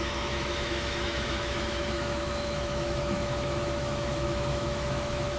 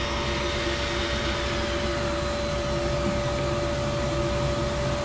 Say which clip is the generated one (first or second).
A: first